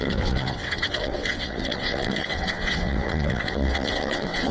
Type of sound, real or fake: fake